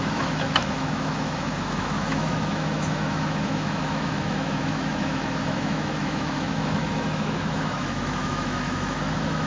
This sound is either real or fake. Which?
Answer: fake